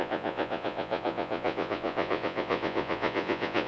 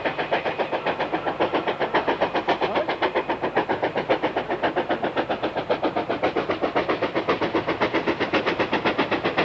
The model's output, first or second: first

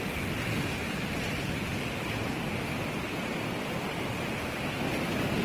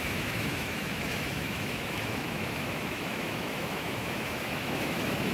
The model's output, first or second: second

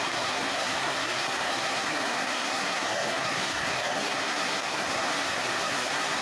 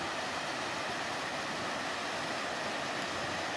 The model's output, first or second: first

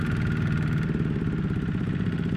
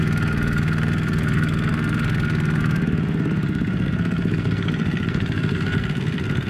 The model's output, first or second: second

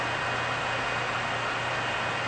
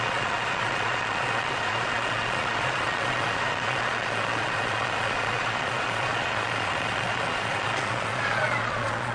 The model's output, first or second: second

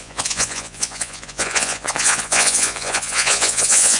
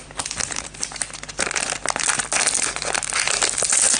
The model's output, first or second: first